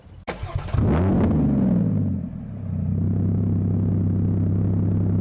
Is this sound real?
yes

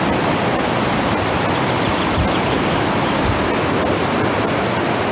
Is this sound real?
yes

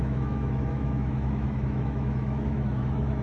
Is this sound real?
no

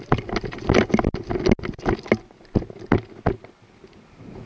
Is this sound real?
yes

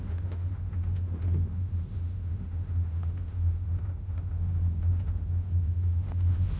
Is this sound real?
no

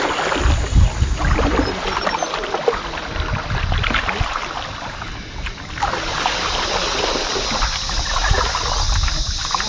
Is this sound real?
yes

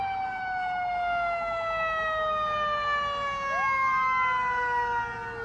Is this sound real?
yes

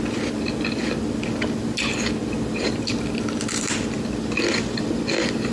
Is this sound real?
yes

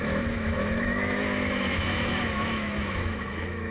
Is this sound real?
no